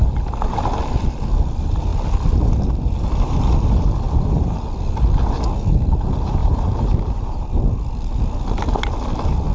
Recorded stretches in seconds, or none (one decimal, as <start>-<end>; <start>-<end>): 0.0-6.4; 7.5-9.5